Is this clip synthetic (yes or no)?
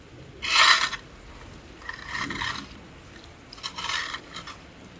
yes